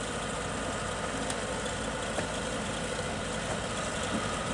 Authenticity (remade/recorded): recorded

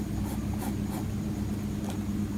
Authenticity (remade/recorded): recorded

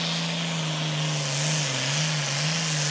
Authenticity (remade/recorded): recorded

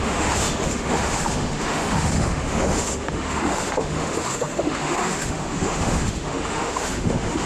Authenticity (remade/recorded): remade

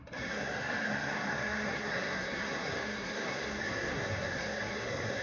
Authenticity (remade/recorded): remade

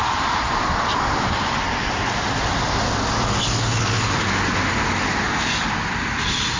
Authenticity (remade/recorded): recorded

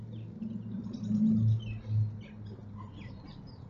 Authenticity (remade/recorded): recorded